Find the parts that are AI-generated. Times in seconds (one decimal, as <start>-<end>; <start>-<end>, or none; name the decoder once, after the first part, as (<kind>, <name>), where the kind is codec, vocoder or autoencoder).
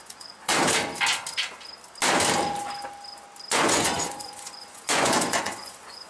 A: 0.0-0.5 (vocoder, Vocos); 3.5-6.1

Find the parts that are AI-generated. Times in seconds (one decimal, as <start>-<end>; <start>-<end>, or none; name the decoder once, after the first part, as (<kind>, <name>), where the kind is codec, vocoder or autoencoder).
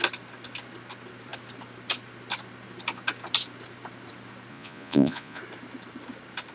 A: 4.5-5.4 (vocoder, Vocos)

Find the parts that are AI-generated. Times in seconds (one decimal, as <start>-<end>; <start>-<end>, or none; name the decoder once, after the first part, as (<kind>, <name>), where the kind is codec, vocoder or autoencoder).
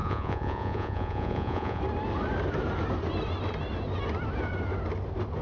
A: 0.0-1.8 (vocoder, Vocos)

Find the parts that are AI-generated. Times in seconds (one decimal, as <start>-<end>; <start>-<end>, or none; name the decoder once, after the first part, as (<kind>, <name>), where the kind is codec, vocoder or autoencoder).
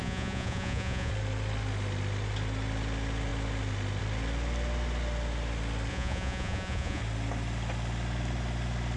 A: 0.0-1.1 (vocoder, Vocos); 5.9-7.0